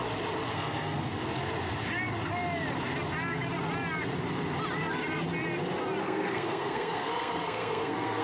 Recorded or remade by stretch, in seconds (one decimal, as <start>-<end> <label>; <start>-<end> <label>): 0.0-0.5 recorded; 0.5-1.1 remade; 1.1-6.0 recorded; 6.0-8.2 remade